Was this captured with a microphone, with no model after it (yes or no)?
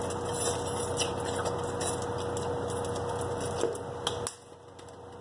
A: yes